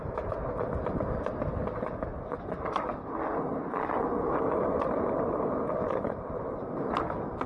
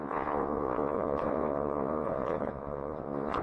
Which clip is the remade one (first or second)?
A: second